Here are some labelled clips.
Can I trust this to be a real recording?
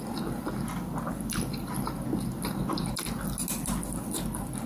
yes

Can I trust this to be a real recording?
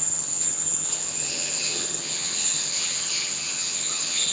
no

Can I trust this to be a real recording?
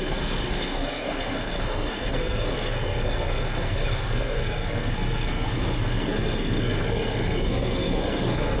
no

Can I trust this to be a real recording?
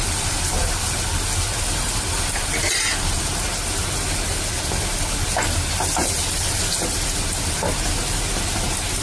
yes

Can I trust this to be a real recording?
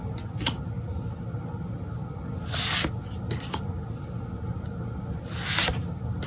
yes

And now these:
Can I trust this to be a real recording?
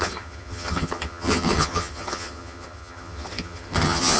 no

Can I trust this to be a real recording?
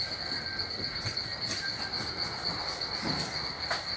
yes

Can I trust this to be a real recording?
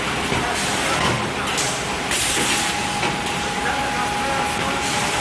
yes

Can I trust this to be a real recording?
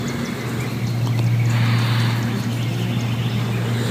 yes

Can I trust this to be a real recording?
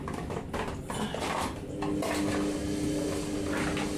yes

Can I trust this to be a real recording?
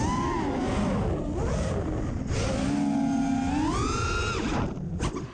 yes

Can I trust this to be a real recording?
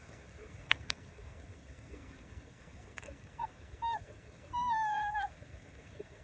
no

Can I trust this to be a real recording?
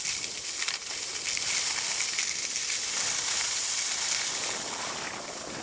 yes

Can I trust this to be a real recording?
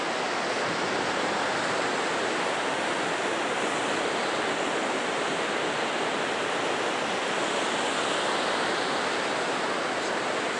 yes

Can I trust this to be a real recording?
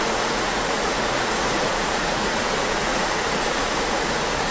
no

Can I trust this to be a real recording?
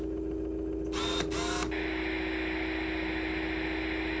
yes